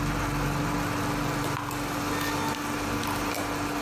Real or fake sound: real